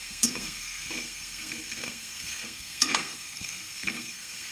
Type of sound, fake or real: fake